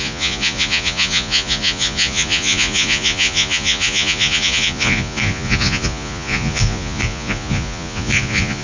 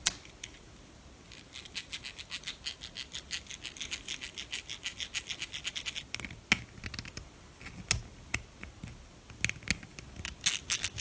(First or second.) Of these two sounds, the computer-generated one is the first